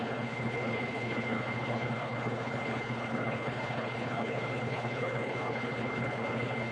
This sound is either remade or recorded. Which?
remade